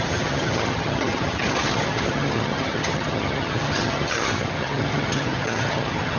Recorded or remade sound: remade